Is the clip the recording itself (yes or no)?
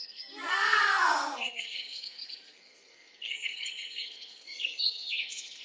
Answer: no